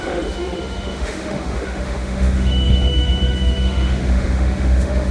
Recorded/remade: remade